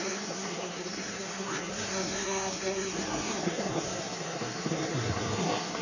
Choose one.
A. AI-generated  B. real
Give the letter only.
A